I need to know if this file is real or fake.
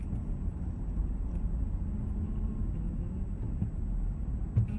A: real